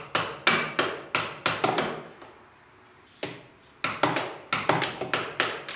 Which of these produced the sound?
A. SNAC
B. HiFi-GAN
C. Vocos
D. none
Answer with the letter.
D